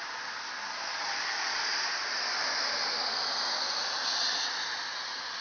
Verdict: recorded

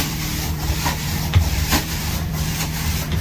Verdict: remade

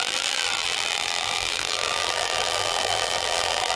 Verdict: remade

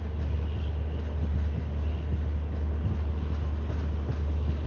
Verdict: recorded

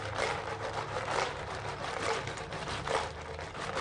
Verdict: recorded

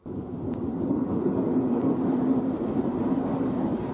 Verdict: recorded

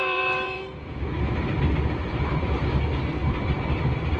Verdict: remade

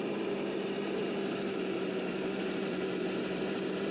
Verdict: remade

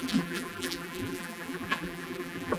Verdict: remade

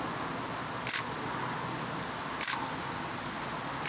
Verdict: recorded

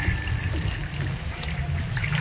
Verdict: recorded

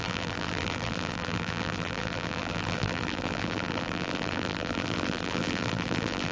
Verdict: remade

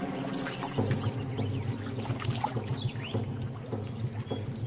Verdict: recorded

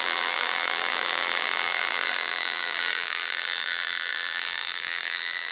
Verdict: remade